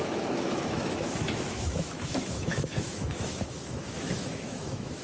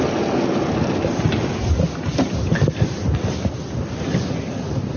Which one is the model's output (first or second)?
first